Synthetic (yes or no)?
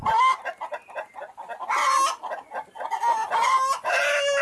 no